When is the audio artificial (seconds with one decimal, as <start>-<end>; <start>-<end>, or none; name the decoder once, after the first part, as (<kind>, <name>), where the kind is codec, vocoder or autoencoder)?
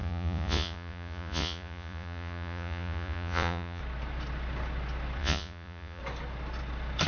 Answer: 0.0-3.8 (vocoder, Vocos); 5.2-6.0